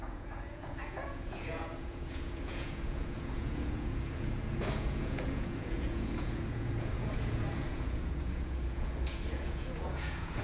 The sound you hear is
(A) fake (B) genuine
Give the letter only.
A